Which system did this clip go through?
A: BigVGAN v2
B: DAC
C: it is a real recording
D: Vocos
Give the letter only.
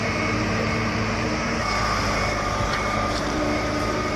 A